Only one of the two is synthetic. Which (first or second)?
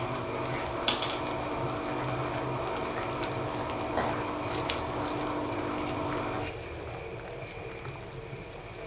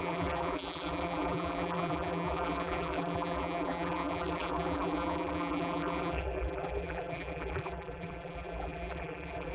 second